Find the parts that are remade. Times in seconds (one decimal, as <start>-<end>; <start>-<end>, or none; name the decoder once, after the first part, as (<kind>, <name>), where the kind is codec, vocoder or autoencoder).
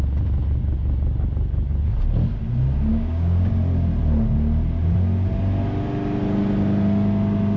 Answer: 2.9-3.5 (codec, DAC)